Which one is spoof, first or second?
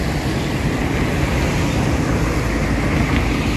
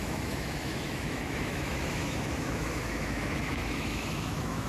second